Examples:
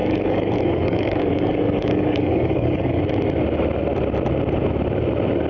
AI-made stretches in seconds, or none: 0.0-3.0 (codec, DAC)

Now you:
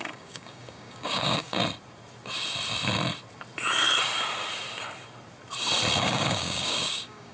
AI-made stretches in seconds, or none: 0.0-1.6 (codec, DAC); 6.0-7.3

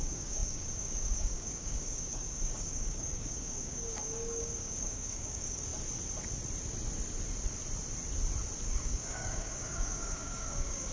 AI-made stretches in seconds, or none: 0.0-5.7 (codec, DAC); 8.8-10.9